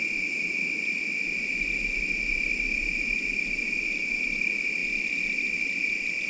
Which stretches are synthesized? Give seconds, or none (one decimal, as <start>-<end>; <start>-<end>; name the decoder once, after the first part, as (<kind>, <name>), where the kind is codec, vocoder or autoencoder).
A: none